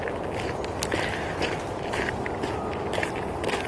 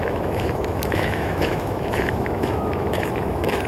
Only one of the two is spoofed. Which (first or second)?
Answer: second